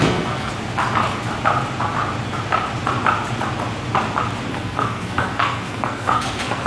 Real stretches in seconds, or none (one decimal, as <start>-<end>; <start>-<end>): 0.5-4.5